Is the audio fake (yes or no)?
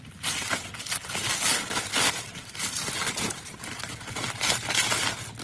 no